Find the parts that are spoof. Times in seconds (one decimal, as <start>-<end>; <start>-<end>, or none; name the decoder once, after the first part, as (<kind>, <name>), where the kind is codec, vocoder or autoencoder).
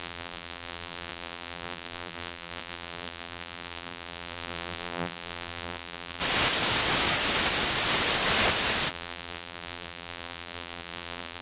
0.0-6.2 (vocoder, BigVGAN v2); 8.9-11.4